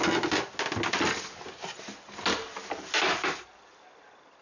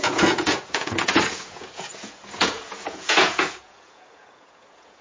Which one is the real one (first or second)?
first